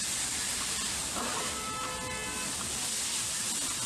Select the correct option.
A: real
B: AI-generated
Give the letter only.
A